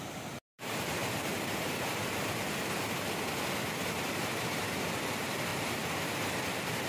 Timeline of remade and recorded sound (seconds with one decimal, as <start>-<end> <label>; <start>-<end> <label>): 0.0-1.0 remade; 1.0-2.6 recorded; 2.6-6.9 remade